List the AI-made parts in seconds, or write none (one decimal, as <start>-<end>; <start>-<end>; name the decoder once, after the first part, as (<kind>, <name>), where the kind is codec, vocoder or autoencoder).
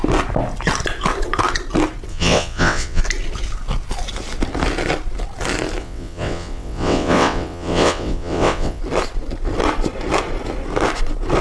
2.1-3.0 (vocoder, WaveNeXt); 5.8-8.8